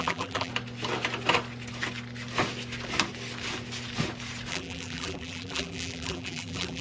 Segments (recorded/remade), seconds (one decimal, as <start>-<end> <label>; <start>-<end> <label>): 0.0-0.5 remade; 0.5-4.5 recorded; 4.5-6.8 remade

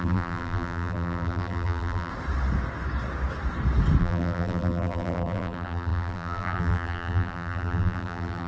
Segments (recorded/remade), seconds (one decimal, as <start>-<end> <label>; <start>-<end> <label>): 0.0-2.1 remade; 2.1-4.0 recorded; 4.0-8.5 remade

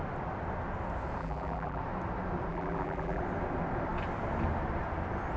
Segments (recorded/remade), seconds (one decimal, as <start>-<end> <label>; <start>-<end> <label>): 0.0-1.2 recorded; 1.2-1.8 remade; 1.8-2.5 recorded; 2.5-3.2 remade; 3.2-5.4 recorded

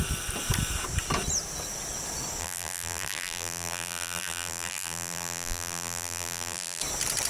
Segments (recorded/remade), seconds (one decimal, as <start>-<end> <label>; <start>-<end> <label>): 0.0-2.4 recorded; 2.4-6.8 remade; 6.8-7.3 recorded

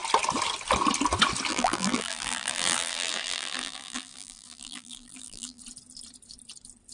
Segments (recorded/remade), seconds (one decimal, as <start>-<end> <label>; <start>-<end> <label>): 0.0-1.5 recorded; 1.5-5.6 remade; 5.6-6.9 recorded

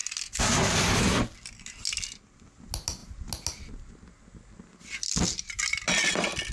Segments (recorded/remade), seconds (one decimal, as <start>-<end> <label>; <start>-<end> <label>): 0.0-6.5 recorded